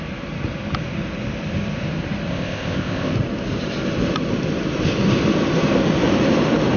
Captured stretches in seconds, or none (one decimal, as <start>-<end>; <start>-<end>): 0.0-2.3; 3.1-6.8